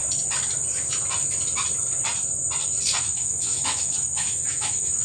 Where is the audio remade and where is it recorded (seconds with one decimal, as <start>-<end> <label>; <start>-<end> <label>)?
0.0-3.0 recorded; 3.0-5.0 remade